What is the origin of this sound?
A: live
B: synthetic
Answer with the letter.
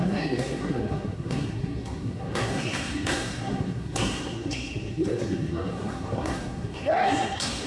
B